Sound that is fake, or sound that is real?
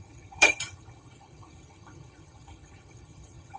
fake